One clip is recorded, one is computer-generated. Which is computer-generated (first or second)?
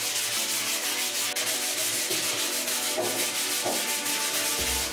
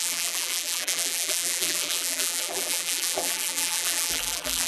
second